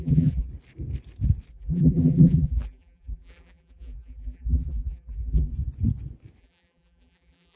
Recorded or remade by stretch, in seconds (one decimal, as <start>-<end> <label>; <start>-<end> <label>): 0.0-0.5 remade; 0.5-1.5 recorded; 1.5-5.5 remade; 5.5-6.4 recorded; 6.4-7.6 remade